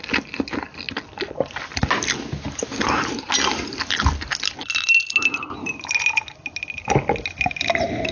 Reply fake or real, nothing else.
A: real